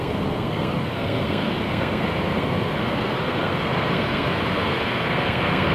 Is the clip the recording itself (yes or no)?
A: no